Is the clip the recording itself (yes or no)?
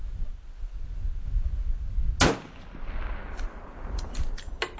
yes